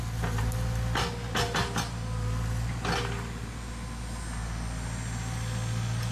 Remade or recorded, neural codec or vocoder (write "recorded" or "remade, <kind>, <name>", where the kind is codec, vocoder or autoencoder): recorded